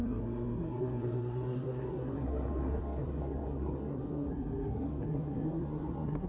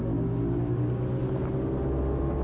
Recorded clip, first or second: second